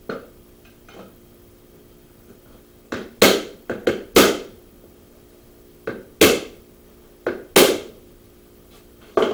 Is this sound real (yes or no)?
yes